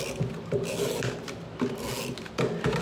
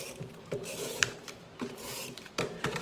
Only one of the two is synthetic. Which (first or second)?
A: second